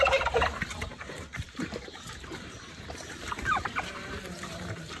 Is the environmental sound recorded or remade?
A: remade